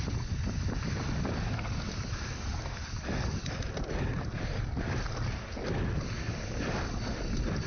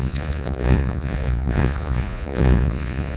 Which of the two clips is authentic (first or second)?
first